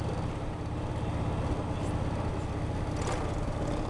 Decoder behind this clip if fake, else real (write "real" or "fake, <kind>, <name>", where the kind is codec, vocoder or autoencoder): real